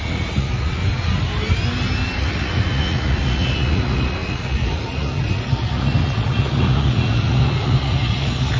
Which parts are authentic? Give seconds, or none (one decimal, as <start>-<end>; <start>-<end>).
0.8-2.2